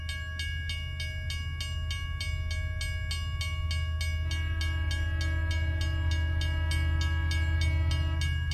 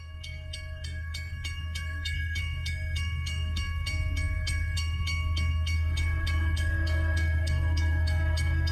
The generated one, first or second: second